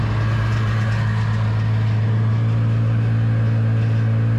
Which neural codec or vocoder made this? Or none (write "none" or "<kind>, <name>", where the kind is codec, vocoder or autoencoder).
none